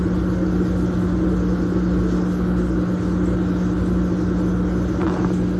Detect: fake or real real